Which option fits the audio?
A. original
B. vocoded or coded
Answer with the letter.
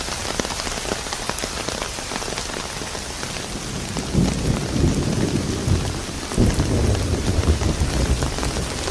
A